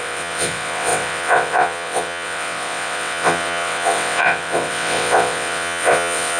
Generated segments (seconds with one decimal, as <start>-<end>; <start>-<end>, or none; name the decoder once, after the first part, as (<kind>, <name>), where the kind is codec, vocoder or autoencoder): 0.0-6.4 (vocoder, WaveNeXt)